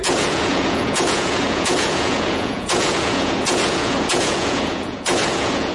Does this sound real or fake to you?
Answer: fake